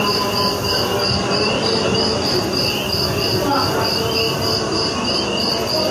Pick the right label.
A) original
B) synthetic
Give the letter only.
A